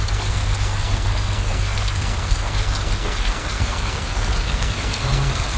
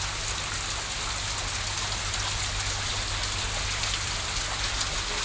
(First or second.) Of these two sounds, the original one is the second